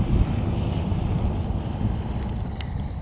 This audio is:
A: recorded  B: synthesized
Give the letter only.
B